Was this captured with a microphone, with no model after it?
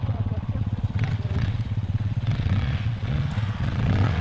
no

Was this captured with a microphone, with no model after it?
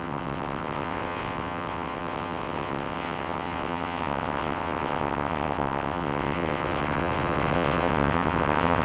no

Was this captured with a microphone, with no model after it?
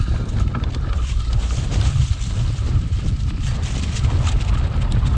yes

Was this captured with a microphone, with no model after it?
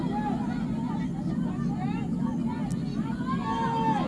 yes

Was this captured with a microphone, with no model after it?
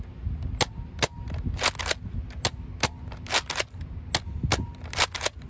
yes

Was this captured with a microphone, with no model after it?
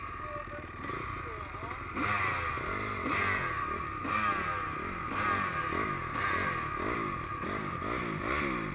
yes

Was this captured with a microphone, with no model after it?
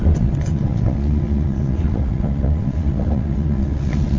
no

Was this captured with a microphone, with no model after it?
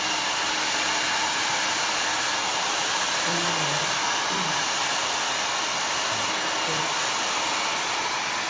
yes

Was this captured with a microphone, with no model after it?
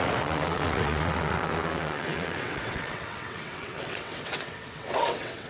no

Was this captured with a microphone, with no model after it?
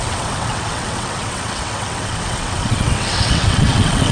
no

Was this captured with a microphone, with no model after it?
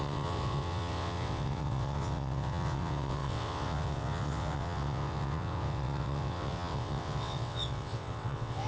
no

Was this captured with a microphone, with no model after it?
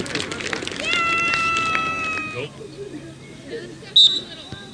yes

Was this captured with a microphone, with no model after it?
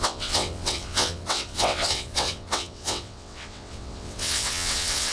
no